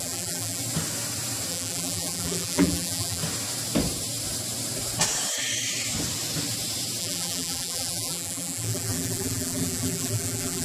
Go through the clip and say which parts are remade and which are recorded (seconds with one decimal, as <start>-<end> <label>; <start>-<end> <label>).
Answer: 0.0-0.6 remade; 0.6-1.5 recorded; 1.5-3.2 remade; 3.2-7.0 recorded; 7.0-10.6 remade